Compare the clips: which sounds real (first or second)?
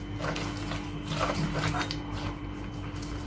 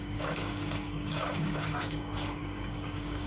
first